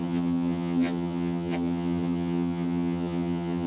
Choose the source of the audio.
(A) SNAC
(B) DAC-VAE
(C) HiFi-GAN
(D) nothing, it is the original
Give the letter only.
C